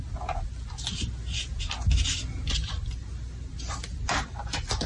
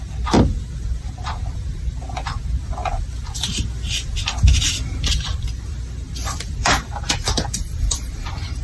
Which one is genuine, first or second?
first